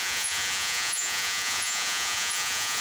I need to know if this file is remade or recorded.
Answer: remade